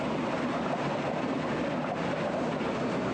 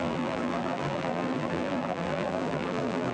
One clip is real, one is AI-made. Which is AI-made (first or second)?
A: second